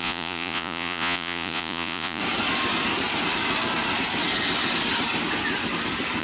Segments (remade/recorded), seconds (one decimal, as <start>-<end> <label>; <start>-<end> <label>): 0.0-2.2 remade; 2.2-6.2 recorded